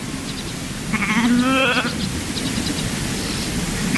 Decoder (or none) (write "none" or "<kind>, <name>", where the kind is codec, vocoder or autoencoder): none